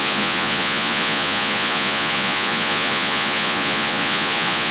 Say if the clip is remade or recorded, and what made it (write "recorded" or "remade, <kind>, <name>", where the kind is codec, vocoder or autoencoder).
remade, vocoder, Vocos